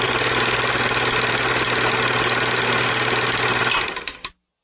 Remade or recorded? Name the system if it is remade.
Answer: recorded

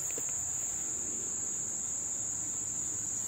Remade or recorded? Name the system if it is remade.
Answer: recorded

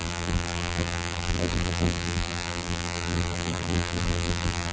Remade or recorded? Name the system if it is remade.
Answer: remade, vocoder, BigVGAN v2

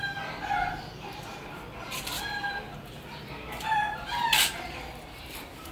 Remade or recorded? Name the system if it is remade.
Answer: remade, vocoder, BigVGAN v2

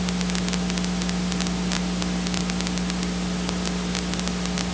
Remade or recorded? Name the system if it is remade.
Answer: recorded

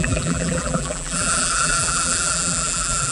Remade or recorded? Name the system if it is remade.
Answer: remade, vocoder, BigVGAN v2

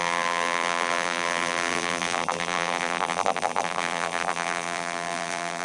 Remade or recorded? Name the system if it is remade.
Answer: remade, vocoder, BigVGAN v2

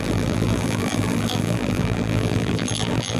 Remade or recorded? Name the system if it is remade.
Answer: remade, vocoder, BigVGAN v2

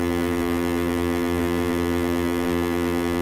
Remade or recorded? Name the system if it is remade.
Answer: remade, vocoder, BigVGAN v2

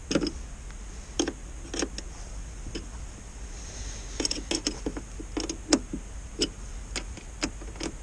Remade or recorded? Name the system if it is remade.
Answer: recorded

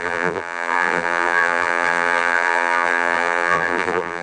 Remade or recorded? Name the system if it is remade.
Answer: remade, vocoder, BigVGAN v2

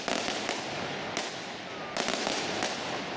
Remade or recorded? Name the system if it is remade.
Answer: recorded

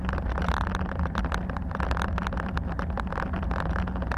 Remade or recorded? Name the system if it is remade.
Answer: recorded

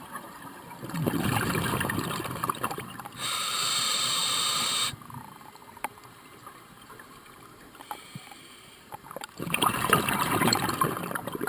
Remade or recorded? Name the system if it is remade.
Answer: remade, vocoder, BigVGAN v2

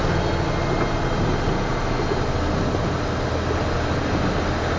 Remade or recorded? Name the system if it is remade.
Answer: recorded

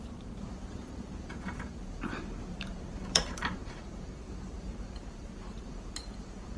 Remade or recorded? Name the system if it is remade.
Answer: remade, vocoder, BigVGAN v2